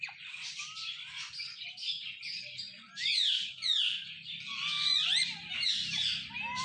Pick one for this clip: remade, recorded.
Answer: recorded